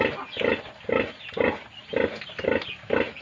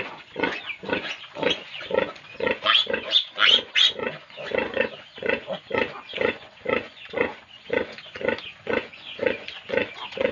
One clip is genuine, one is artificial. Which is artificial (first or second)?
second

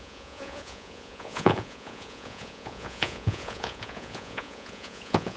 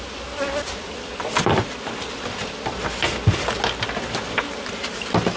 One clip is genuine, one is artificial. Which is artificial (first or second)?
first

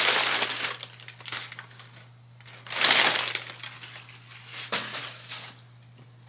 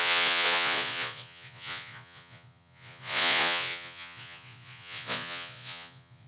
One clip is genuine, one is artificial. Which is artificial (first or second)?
second